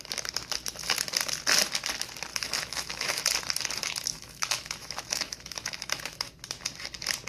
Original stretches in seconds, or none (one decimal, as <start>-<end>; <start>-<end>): 0.0-2.3; 3.2-4.1; 6.3-7.3